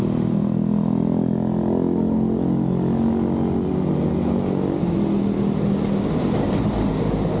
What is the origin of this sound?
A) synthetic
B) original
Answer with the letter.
B